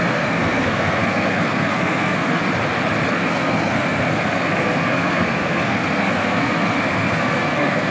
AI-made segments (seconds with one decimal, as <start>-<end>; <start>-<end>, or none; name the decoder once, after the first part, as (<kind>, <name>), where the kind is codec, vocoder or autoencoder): 0.0-2.4 (codec, SNAC); 3.1-7.9